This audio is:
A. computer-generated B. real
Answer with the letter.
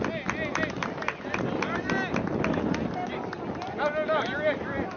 B